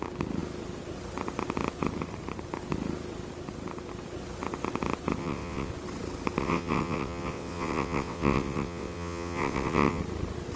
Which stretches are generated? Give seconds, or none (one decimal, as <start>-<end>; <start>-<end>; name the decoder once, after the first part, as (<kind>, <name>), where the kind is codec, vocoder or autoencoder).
5.2-5.7 (vocoder, WaveNeXt); 6.4-10.0